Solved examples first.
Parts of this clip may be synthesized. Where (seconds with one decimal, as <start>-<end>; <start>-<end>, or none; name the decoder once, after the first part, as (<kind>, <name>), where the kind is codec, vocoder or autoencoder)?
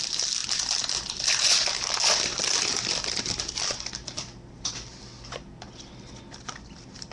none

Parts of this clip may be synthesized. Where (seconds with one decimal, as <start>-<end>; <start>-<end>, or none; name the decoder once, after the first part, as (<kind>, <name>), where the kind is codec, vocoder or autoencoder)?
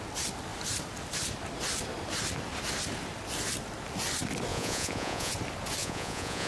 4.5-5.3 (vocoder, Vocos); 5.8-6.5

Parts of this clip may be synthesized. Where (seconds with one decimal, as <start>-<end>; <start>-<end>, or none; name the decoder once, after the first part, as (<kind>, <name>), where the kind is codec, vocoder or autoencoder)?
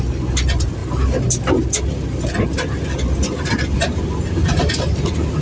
none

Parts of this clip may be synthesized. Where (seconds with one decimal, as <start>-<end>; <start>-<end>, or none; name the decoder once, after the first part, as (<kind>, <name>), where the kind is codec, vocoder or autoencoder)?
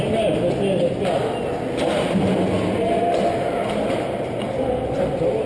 none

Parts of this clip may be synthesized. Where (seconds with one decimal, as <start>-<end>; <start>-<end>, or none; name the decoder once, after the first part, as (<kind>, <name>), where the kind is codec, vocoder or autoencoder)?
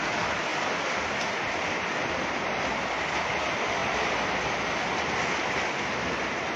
none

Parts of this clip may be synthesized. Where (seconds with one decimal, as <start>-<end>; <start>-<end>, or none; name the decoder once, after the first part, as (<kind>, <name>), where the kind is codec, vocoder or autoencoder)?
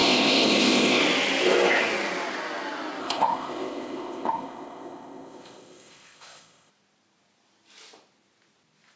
0.0-1.0 (codec, ZipCodec); 3.0-6.7